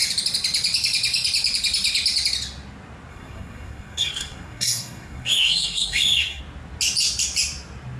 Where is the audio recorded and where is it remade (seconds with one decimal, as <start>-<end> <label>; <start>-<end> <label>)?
0.0-3.1 recorded; 3.1-6.4 remade; 6.4-8.0 recorded